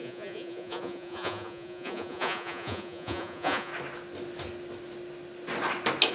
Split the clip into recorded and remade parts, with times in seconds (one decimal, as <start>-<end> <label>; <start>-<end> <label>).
0.0-3.7 remade; 3.7-6.1 recorded